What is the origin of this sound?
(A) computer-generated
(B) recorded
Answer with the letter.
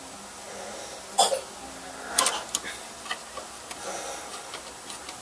B